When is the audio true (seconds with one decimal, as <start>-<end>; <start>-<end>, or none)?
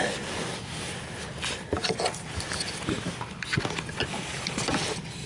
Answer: 0.0-5.3